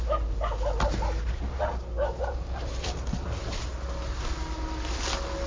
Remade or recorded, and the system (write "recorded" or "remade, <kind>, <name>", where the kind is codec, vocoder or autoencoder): recorded